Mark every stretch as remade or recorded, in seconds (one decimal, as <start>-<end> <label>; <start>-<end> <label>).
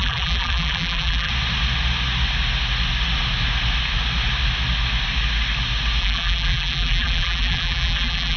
0.0-1.3 remade; 1.3-6.0 recorded; 6.0-8.4 remade